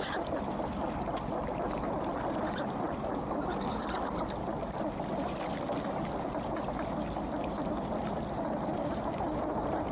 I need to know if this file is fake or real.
real